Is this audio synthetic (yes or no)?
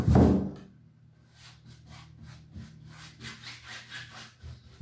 no